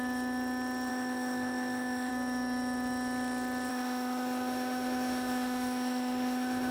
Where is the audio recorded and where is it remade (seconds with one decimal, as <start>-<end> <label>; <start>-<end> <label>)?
0.0-0.9 recorded; 0.9-2.1 remade; 2.1-3.7 recorded; 3.7-6.7 remade